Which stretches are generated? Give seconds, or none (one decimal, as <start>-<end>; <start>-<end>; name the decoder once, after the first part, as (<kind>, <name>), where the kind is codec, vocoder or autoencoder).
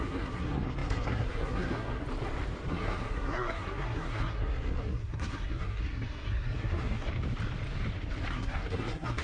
0.0-2.0 (codec, SNAC); 2.7-7.1; 8.3-9.2